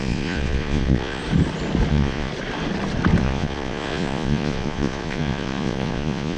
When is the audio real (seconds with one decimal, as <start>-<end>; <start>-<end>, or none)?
1.2-1.9; 2.3-3.2